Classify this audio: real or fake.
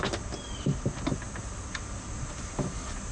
real